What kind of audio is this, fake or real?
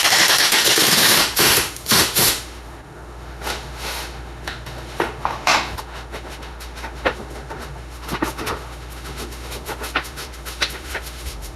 fake